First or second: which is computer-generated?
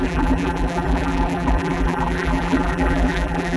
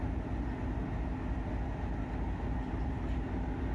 first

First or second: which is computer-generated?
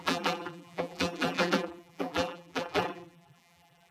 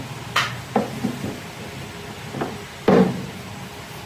first